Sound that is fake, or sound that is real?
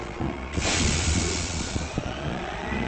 fake